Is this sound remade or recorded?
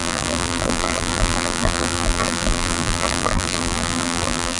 remade